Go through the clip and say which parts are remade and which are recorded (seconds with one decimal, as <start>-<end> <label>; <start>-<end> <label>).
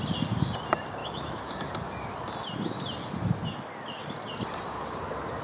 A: 0.0-1.0 recorded; 1.0-1.7 remade; 1.7-5.4 recorded